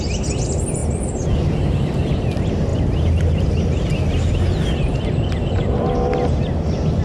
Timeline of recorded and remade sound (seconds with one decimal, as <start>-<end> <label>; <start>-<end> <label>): 0.0-7.0 recorded

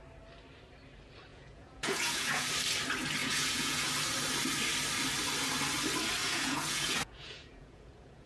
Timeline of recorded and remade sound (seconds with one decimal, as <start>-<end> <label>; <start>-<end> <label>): 0.0-1.3 recorded; 1.3-2.5 remade; 2.5-3.2 recorded; 3.2-3.9 remade; 3.9-6.2 recorded; 6.2-8.3 remade

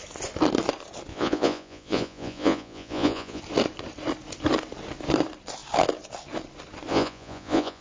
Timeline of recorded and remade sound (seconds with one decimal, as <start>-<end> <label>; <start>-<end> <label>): 0.0-1.1 recorded; 1.1-3.4 remade; 3.4-6.9 recorded; 6.9-7.8 remade

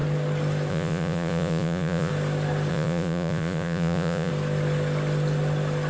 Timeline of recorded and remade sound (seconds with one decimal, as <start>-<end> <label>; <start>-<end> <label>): 0.0-0.7 recorded; 0.7-2.1 remade; 2.1-2.7 recorded; 2.7-4.3 remade; 4.3-5.9 recorded

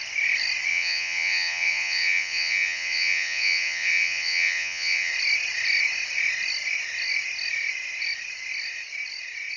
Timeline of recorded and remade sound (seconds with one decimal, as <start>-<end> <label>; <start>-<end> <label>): 0.0-0.7 recorded; 0.7-5.1 remade; 5.1-9.6 recorded

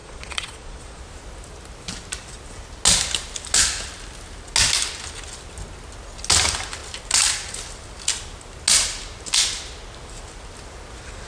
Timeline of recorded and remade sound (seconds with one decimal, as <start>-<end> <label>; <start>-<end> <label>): 0.0-1.0 remade; 1.0-11.3 recorded

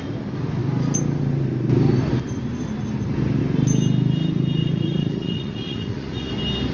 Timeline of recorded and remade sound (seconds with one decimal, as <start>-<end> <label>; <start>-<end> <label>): 0.0-4.6 recorded; 4.6-6.3 remade; 6.3-6.7 recorded